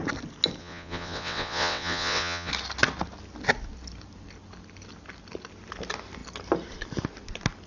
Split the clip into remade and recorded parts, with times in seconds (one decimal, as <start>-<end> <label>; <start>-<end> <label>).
0.0-0.6 recorded; 0.6-2.5 remade; 2.5-7.7 recorded